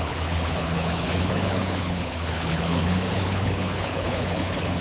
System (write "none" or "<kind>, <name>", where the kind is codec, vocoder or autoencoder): codec, HILCodec